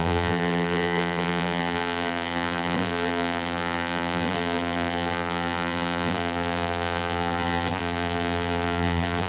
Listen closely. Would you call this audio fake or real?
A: fake